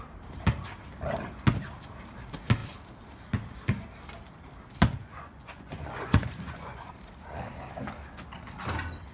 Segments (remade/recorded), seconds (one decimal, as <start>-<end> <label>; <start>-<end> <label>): 0.0-5.0 recorded; 5.0-6.8 remade; 6.8-9.1 recorded